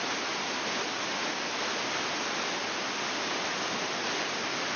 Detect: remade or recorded recorded